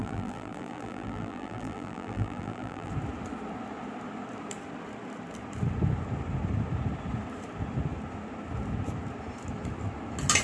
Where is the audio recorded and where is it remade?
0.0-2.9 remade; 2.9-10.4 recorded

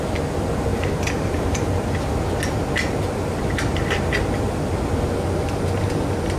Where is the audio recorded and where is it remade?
0.0-0.7 recorded; 0.7-2.1 remade; 2.1-6.4 recorded

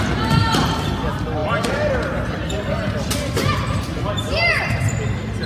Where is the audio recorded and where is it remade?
0.0-5.5 recorded

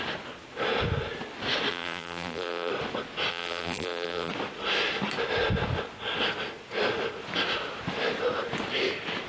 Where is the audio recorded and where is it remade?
0.0-1.7 recorded; 1.7-2.7 remade; 2.7-3.3 recorded; 3.3-4.3 remade; 4.3-9.3 recorded

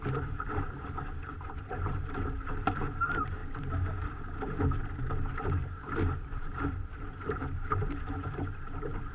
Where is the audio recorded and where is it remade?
0.0-9.1 remade

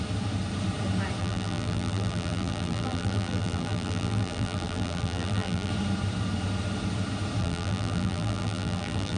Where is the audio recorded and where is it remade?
0.0-1.2 recorded; 1.2-5.7 remade; 5.7-7.4 recorded; 7.4-9.2 remade